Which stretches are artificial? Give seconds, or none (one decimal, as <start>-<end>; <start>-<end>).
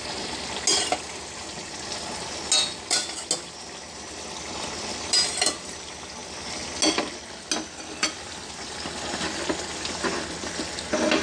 none